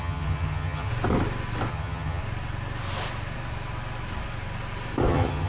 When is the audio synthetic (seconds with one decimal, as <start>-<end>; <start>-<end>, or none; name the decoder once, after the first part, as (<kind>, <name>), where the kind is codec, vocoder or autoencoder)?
0.0-0.9 (vocoder, HiFi-GAN); 1.7-2.2; 5.1-5.5